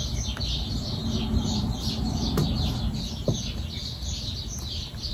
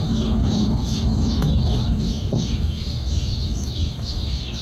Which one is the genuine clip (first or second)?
first